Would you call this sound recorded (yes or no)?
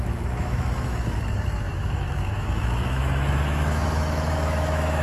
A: no